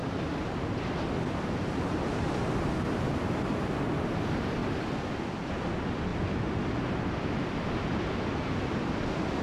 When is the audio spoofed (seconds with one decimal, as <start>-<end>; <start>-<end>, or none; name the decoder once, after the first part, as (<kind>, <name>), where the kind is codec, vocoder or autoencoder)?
0.0-2.5 (vocoder, BigVGAN v2); 4.6-5.1